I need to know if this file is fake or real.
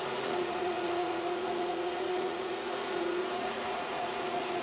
fake